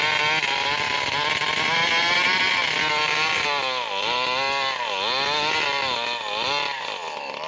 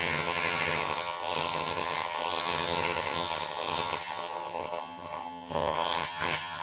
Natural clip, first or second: first